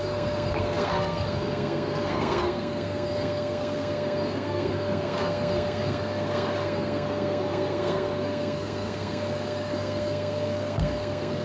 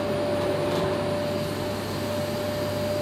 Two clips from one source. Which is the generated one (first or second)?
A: first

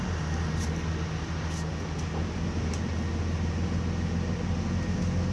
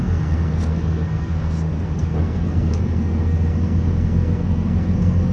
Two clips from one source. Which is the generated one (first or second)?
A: second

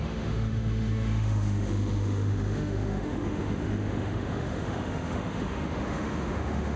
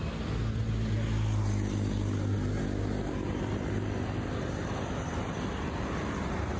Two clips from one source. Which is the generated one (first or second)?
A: first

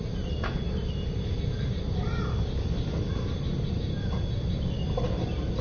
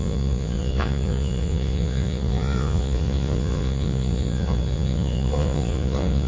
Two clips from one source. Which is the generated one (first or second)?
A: second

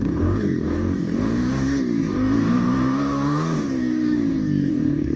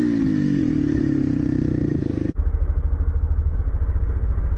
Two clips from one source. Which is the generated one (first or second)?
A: first